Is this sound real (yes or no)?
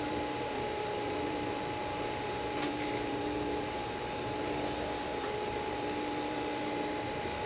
no